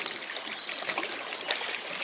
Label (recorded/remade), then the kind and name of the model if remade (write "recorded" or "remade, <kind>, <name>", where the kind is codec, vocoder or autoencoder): recorded